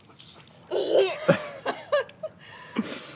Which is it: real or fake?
real